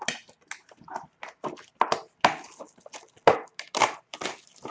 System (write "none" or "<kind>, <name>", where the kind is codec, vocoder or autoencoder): none